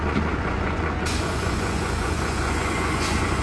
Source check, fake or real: fake